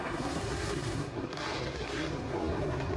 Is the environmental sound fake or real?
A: fake